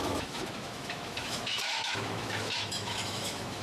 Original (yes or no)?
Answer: no